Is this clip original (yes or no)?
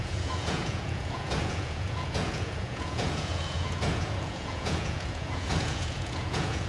no